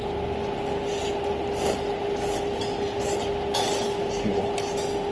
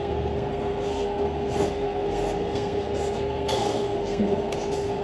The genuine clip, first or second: first